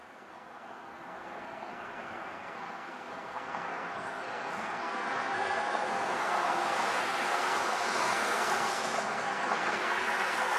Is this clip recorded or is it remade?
remade